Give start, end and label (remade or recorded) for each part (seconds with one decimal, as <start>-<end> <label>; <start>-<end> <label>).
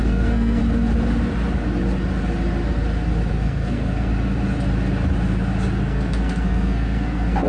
0.0-0.6 remade; 0.6-3.3 recorded; 3.3-4.1 remade; 4.1-5.8 recorded; 5.8-7.5 remade